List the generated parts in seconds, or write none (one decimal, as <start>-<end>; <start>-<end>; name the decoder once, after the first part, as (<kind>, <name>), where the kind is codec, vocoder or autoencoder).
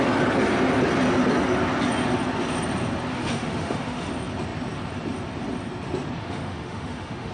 3.1-4.1 (autoencoder, DAC-VAE); 6.2-7.3